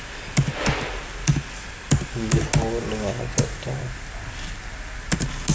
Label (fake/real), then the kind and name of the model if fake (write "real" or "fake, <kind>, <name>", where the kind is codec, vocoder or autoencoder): real